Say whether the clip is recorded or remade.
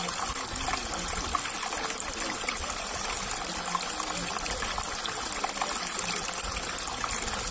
recorded